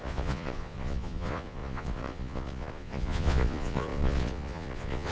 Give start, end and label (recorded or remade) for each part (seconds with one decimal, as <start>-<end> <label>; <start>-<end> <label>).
0.0-5.1 remade